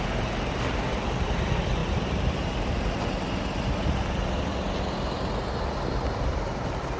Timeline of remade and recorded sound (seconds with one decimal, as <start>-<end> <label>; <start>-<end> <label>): 0.0-7.0 recorded